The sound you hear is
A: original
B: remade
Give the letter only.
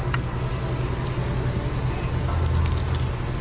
A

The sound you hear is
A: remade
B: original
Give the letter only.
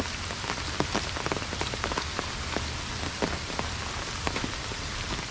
B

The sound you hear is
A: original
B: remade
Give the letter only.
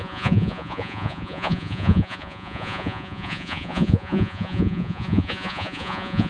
B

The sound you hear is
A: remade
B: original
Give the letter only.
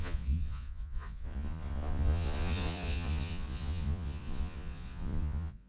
A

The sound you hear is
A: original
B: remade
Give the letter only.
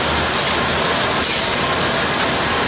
A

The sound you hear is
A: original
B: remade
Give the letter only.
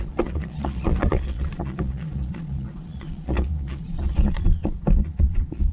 B